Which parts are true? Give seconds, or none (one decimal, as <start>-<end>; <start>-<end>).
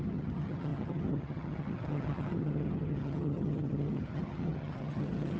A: none